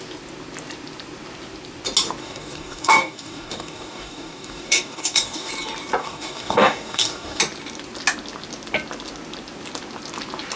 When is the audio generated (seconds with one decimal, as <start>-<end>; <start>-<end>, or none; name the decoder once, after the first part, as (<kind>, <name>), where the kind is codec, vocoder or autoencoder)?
2.2-5.5 (codec, DAC); 6.0-7.4

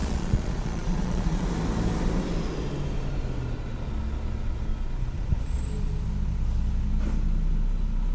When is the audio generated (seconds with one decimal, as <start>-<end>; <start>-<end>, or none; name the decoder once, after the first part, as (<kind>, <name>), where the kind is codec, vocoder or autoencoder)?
0.0-1.5 (vocoder, Vocos); 5.0-5.6